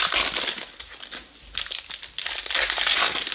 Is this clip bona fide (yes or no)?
yes